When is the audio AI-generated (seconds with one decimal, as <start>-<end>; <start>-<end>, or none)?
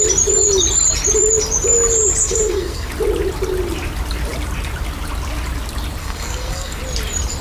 2.2-2.9; 6.0-6.8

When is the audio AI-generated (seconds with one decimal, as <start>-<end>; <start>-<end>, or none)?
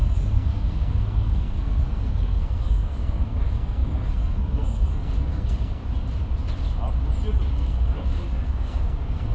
0.0-5.8; 7.5-9.3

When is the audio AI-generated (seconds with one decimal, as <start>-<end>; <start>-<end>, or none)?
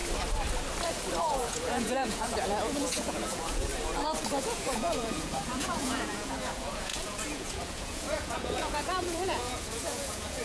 1.2-3.7; 4.4-10.4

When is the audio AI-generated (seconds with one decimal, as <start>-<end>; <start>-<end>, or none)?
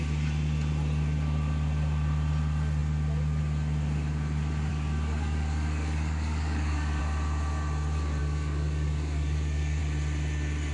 4.7-7.0; 8.2-9.8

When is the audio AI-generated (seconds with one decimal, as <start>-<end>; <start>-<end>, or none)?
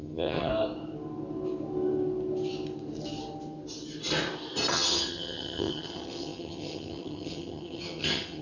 0.0-0.5; 4.7-8.4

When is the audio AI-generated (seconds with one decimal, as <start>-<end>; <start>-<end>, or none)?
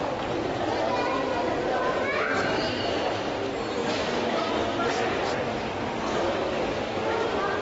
2.1-2.8; 3.8-4.7; 6.1-7.0